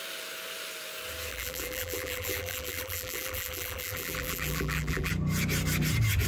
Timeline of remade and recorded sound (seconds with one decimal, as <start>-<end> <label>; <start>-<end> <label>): 0.0-1.3 recorded; 1.3-5.1 remade; 5.1-6.3 recorded